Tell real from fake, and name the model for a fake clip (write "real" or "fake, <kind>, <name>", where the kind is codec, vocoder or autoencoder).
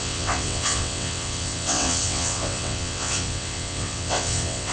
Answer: fake, vocoder, WaveNeXt